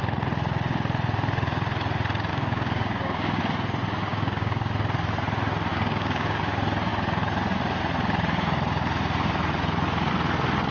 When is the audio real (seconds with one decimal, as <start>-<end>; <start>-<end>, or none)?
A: 0.0-2.3; 3.4-4.1; 4.7-5.7; 6.4-10.7